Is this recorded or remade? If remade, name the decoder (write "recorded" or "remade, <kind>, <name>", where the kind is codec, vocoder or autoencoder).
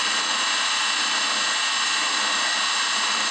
recorded